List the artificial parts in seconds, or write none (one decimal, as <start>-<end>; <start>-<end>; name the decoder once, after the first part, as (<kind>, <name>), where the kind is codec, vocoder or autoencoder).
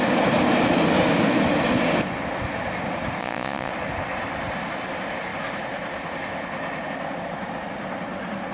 3.2-3.7 (vocoder, Vocos)